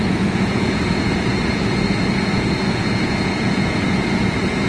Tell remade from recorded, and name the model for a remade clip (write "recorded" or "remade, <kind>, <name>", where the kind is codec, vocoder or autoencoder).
remade, vocoder, Vocos